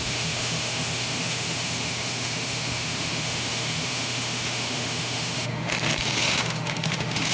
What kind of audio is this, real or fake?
fake